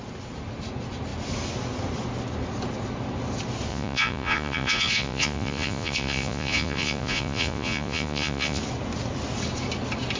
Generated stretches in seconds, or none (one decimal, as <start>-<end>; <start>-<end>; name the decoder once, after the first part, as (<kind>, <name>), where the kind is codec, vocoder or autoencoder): 3.7-8.6 (vocoder, Vocos)